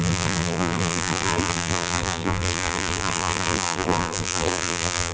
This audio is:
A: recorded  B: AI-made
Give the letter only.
B